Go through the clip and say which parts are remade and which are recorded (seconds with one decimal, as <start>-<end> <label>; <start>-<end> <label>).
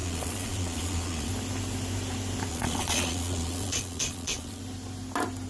0.0-1.3 remade; 1.3-2.5 recorded; 2.5-4.6 remade; 4.6-5.5 recorded